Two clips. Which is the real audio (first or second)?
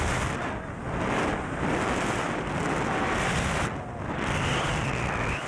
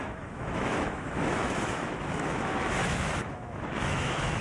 first